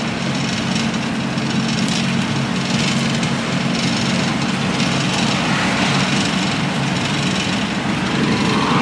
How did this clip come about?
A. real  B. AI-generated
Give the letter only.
A